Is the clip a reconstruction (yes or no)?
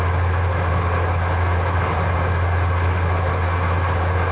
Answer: no